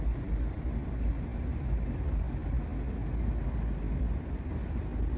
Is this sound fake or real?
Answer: real